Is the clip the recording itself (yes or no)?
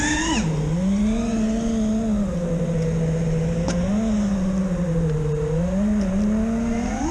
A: yes